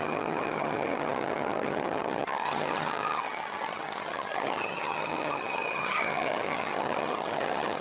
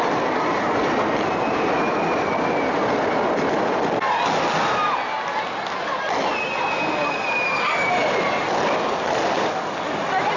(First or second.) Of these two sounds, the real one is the second